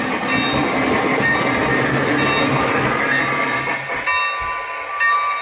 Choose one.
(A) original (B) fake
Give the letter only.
A